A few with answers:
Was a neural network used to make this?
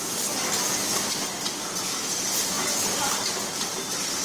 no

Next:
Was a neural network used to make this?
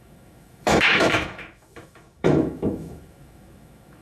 yes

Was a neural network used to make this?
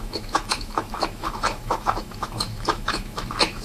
yes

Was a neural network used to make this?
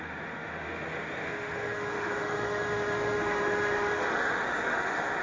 yes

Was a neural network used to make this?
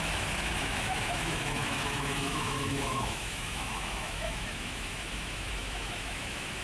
yes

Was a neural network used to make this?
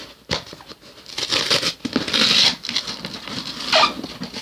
no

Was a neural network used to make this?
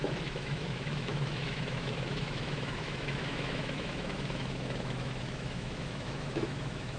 yes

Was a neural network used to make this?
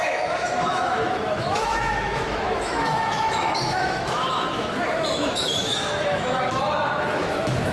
yes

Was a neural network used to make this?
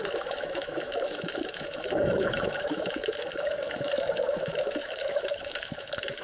yes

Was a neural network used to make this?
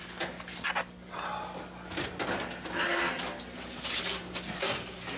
no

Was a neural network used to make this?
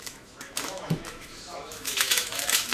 yes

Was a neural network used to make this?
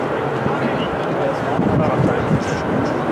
no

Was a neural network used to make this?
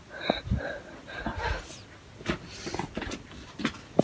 no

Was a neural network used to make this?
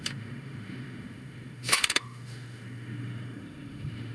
yes